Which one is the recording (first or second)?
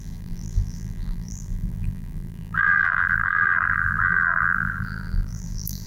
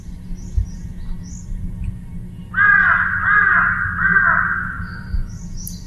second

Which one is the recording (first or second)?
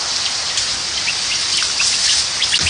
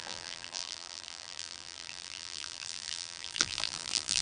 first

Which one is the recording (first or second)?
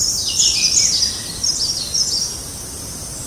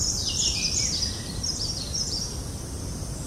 first